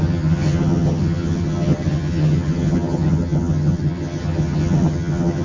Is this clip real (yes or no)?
no